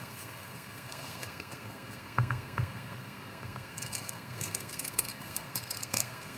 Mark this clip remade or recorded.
remade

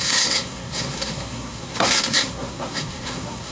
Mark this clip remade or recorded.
remade